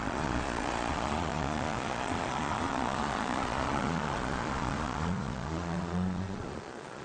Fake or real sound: fake